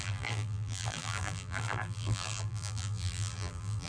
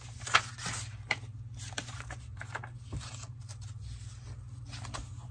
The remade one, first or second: first